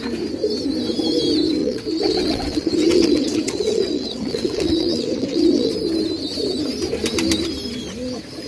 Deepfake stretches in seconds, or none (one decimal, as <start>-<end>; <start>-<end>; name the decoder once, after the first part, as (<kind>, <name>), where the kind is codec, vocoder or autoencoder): 1.6-5.7 (vocoder, WaveNeXt)